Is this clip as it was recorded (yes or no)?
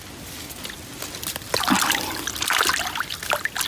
yes